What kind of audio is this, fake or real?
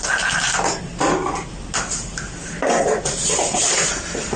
real